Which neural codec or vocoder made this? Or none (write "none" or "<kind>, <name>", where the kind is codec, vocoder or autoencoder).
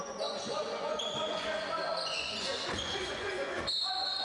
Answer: vocoder, Vocos